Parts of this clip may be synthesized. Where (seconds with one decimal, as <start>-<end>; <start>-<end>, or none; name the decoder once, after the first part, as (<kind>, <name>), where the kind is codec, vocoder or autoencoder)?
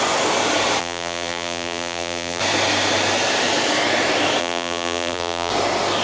0.8-2.4 (vocoder, BigVGAN v2); 4.4-5.5